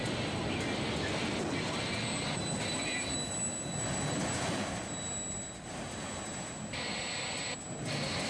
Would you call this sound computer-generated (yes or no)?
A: no